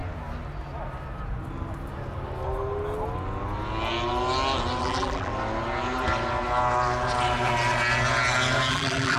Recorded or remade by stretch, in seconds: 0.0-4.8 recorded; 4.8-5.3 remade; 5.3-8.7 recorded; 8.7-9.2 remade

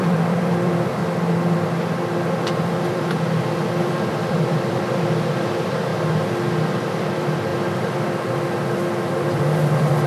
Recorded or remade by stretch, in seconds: 0.0-1.0 remade; 1.0-2.2 recorded; 2.2-5.9 remade; 5.9-7.0 recorded; 7.0-7.5 remade; 7.5-9.2 recorded; 9.2-10.1 remade

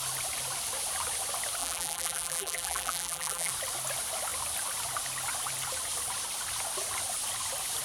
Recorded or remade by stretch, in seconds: 0.0-1.6 recorded; 1.6-3.5 remade; 3.5-7.8 recorded

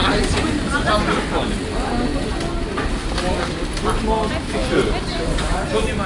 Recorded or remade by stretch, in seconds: 0.0-2.1 recorded; 2.1-2.6 remade; 2.6-4.6 recorded; 4.6-6.1 remade

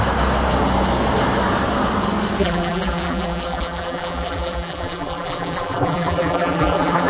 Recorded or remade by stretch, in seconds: 0.0-2.4 recorded; 2.4-7.1 remade